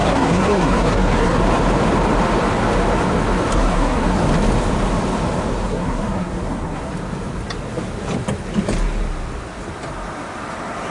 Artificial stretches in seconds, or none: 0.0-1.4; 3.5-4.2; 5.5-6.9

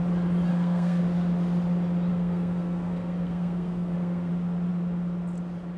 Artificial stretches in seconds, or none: 0.5-1.0; 2.1-4.3

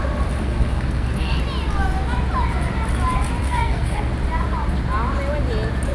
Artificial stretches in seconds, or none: 0.4-1.4; 3.4-4.1